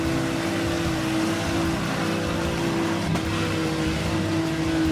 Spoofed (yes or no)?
no